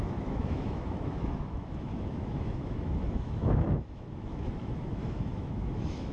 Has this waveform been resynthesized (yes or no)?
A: yes